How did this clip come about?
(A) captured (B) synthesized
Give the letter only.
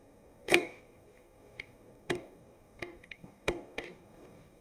B